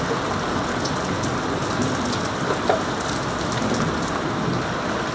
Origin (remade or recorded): recorded